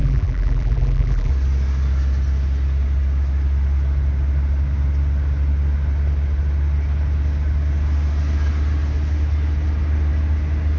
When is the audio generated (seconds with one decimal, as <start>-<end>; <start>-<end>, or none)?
0.0-1.3